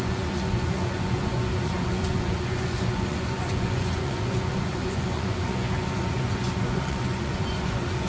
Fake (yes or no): yes